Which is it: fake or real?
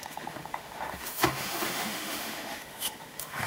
fake